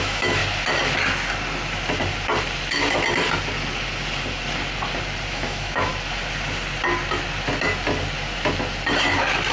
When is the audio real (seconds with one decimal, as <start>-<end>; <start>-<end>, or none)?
0.4-5.3; 5.9-9.5